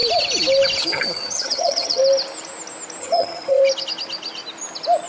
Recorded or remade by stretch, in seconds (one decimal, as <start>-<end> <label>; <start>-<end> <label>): 0.0-0.8 recorded; 0.8-2.0 remade; 2.0-3.0 recorded; 3.0-3.6 remade; 3.6-5.1 recorded